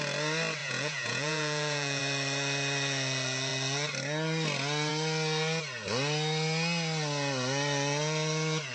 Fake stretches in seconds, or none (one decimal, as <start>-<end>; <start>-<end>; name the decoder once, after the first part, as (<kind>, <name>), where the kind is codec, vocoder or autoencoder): 0.6-2.0 (vocoder, Vocos)